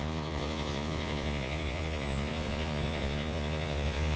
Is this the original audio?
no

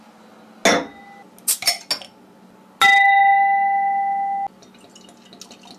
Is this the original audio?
yes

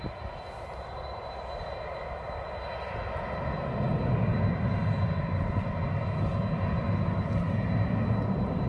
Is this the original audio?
yes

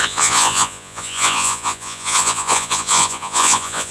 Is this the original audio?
no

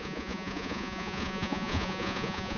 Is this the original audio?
no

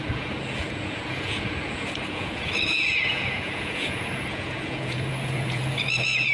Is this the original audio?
no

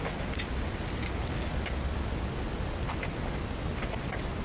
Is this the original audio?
yes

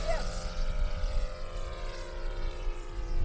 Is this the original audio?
no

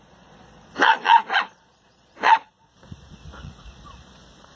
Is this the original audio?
no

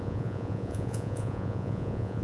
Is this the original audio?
no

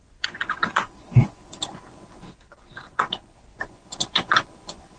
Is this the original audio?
no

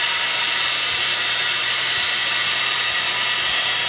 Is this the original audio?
yes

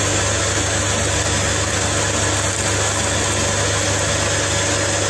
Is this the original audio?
yes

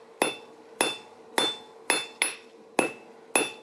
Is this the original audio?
yes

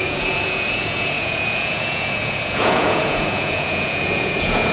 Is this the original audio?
no